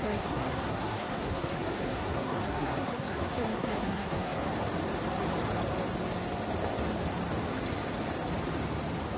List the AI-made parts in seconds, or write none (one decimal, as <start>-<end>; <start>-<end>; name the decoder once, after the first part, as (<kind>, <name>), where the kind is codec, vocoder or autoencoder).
0.0-4.4 (codec, SNAC)